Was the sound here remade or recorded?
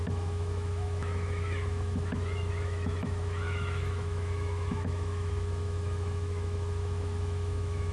remade